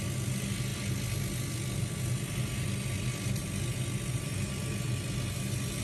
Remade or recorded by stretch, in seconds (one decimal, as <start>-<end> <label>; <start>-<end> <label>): 0.0-5.8 recorded